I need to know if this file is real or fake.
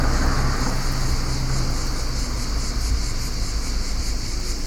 real